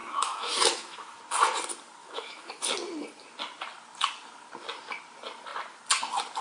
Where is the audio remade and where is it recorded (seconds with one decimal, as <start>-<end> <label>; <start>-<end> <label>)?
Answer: 0.0-1.2 remade; 1.2-2.0 recorded; 2.0-2.6 remade; 2.6-6.4 recorded